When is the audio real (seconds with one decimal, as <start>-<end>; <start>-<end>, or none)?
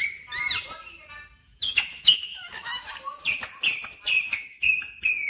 0.0-1.4; 2.9-4.3; 4.8-5.3